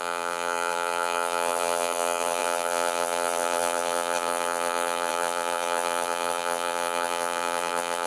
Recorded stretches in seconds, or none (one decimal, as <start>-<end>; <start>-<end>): none

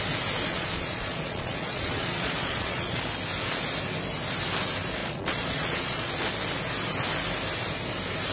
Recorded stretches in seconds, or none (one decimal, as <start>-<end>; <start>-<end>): 0.0-0.5; 3.0-5.0; 6.3-8.3